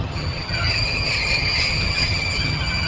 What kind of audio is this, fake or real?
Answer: fake